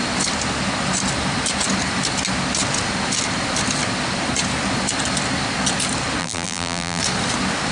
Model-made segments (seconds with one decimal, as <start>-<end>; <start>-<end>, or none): 6.2-7.0